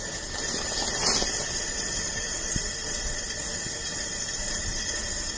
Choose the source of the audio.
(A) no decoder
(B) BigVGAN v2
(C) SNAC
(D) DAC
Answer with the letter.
A